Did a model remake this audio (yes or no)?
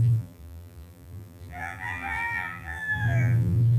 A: yes